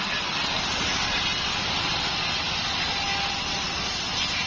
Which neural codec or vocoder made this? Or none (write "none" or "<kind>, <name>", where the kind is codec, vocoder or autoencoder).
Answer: none